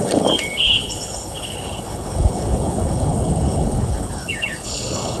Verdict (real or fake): fake